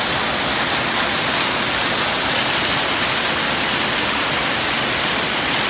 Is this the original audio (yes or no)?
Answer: yes